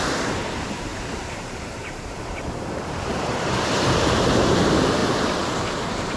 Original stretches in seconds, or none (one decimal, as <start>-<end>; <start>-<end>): 5.0-5.6